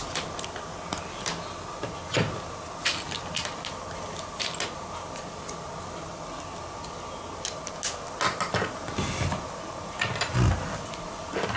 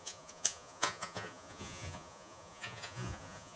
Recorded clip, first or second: first